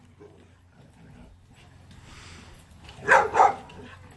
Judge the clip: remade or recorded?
recorded